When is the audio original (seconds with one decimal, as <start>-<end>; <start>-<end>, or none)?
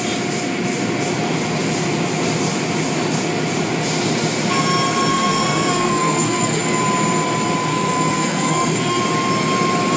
0.0-5.1; 6.6-7.7; 9.0-10.0